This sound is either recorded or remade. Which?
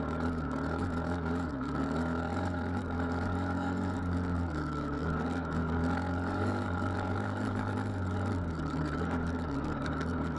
remade